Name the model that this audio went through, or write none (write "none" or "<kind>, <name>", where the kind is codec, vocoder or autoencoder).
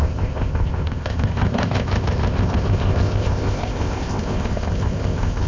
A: codec, ZipCodec